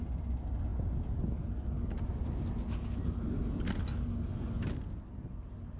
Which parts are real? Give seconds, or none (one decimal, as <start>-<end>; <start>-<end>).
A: 0.0-5.8